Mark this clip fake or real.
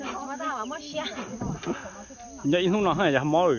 real